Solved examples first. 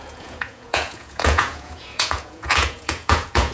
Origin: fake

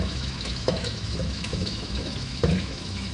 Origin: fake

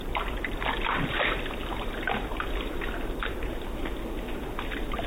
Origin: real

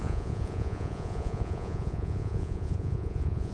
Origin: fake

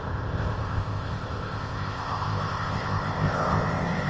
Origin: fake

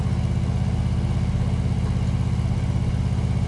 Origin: real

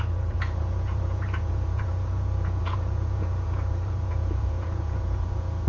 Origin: fake